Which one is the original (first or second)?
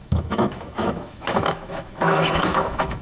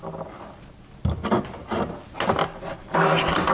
second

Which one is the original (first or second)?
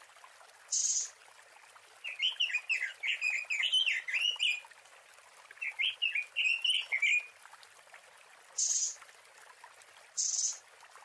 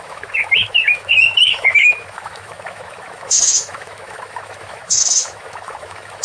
first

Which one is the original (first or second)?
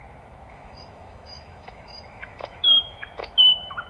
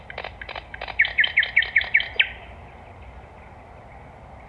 second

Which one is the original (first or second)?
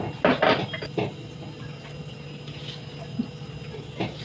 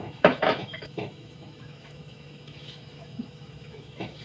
first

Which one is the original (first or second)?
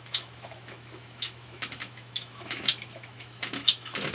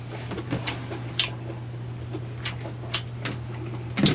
second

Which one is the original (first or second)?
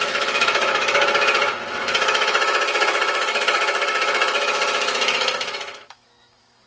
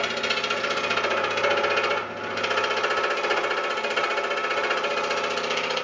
second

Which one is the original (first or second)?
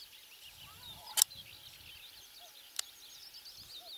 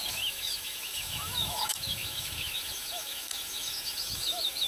first